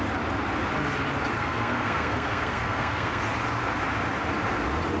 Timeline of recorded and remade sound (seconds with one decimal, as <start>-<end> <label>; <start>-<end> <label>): 0.0-1.3 recorded; 1.3-3.2 remade; 3.2-5.0 recorded